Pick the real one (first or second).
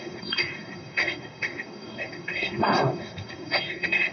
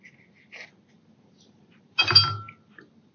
second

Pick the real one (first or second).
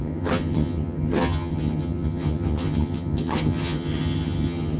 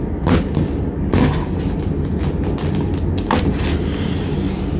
second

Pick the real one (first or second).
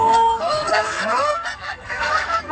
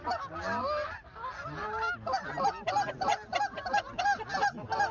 second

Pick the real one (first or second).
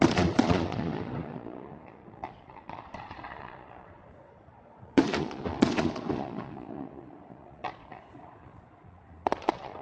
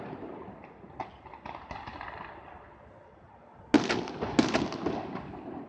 second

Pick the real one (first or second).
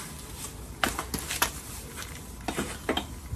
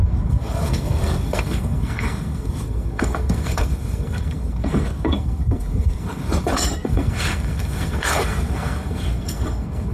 first